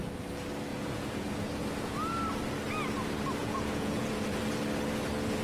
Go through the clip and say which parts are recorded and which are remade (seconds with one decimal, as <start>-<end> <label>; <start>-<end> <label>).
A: 0.0-0.7 recorded; 0.7-1.9 remade; 1.9-3.4 recorded; 3.4-4.4 remade; 4.4-5.4 recorded